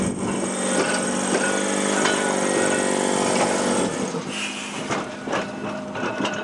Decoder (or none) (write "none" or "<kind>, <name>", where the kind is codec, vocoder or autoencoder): none